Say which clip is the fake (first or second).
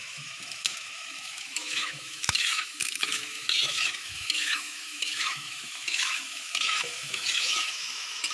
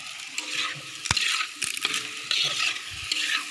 first